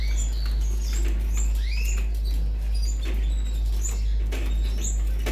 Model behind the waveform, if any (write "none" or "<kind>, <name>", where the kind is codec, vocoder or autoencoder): none